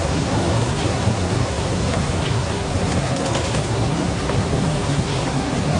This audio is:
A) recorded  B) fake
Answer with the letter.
B